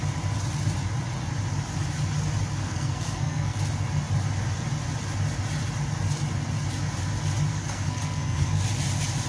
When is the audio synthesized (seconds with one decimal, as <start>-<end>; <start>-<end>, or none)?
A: 2.6-3.6; 7.5-8.6

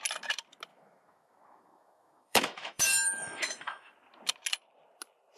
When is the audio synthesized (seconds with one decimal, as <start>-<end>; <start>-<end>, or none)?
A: 0.7-3.9

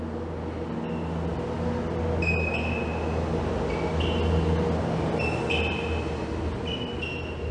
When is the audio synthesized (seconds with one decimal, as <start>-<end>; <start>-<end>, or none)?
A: none

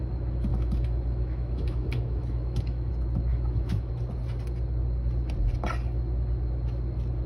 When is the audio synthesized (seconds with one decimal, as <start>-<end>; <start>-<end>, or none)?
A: 0.5-2.9; 3.3-3.9

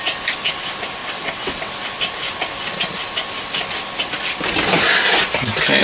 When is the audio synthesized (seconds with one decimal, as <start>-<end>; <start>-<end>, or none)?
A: 1.0-1.7

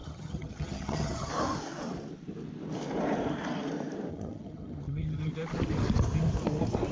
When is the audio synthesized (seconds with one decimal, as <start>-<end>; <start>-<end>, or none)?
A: 0.0-1.3; 4.1-5.3